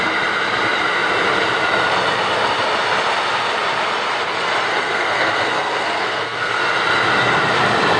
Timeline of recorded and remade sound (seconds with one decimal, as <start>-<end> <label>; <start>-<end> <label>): 0.0-4.7 recorded; 4.7-6.6 remade; 6.6-8.0 recorded